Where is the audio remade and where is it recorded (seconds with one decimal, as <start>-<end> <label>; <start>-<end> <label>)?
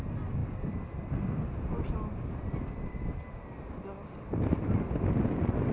0.0-5.7 recorded